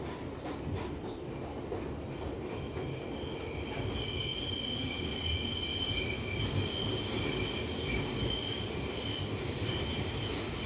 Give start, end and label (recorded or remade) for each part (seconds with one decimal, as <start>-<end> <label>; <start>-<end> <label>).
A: 0.0-10.7 recorded